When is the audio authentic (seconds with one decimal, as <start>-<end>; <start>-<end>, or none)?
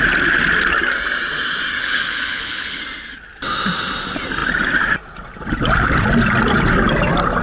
0.0-1.8; 2.8-7.4